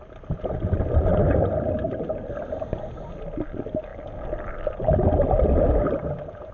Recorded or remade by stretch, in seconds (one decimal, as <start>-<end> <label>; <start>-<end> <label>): 0.0-6.5 recorded